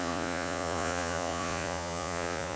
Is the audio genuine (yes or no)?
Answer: no